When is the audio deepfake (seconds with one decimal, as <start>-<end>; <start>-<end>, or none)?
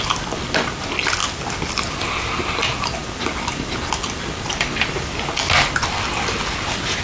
none